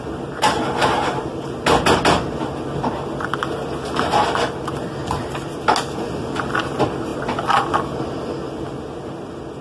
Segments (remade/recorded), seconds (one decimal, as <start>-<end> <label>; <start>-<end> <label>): 0.0-9.6 recorded

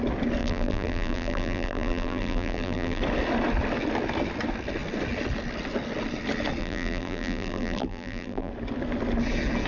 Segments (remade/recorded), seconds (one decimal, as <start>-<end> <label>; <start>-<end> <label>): 0.0-0.4 recorded; 0.4-3.0 remade; 3.0-6.6 recorded; 6.6-8.5 remade; 8.5-9.7 recorded